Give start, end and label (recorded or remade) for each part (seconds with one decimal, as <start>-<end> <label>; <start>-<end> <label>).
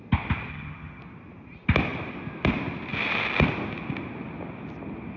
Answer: 0.0-0.5 recorded; 0.5-1.0 remade; 1.0-5.2 recorded